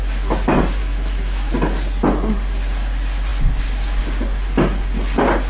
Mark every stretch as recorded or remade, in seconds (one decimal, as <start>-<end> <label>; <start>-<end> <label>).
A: 0.0-0.8 recorded; 0.8-1.5 remade; 1.5-5.5 recorded